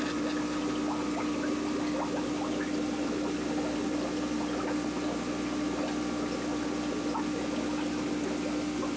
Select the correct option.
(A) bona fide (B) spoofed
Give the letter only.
A